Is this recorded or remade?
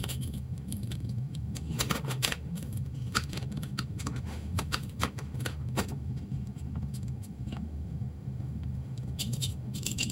remade